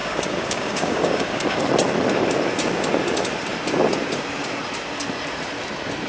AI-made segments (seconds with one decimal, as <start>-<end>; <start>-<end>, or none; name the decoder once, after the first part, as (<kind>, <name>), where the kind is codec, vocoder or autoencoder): 0.0-1.6 (codec, DAC)